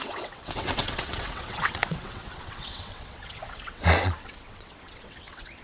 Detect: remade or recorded remade